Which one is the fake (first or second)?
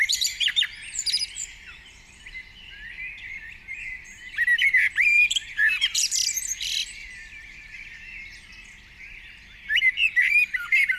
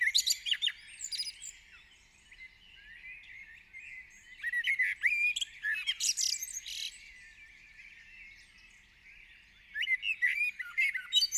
first